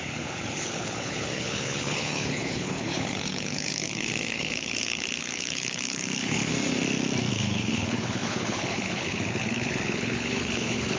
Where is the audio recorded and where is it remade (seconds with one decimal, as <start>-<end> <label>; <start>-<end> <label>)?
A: 0.0-6.4 remade; 6.4-7.3 recorded; 7.3-11.0 remade